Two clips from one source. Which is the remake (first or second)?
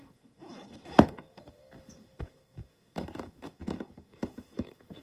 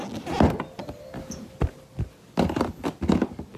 first